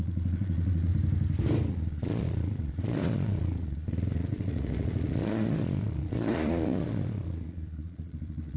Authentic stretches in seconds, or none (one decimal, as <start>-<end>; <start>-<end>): 0.9-1.7